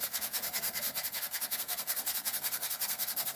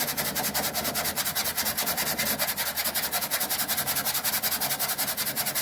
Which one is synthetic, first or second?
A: first